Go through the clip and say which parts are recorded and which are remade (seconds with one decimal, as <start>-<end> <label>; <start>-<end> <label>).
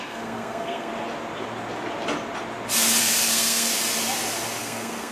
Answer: 0.0-0.9 remade; 0.9-3.0 recorded; 3.0-3.7 remade; 3.7-4.6 recorded; 4.6-5.1 remade